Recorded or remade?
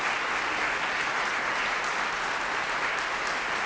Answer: recorded